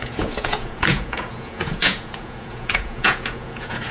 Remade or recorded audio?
remade